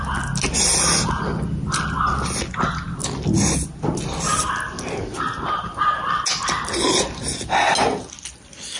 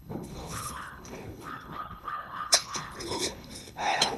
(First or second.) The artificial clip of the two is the second